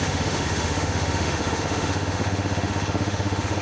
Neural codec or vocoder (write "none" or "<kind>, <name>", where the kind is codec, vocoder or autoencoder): autoencoder, DAC-VAE